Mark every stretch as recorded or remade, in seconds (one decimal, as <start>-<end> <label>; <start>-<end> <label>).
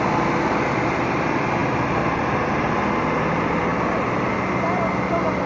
0.0-5.5 recorded